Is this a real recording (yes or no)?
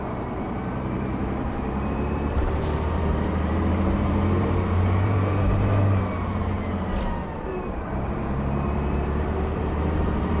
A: no